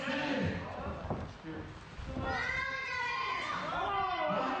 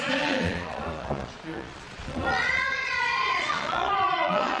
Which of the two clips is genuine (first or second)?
first